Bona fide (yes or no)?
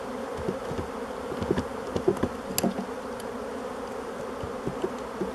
yes